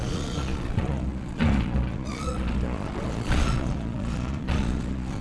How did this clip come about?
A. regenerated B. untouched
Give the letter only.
A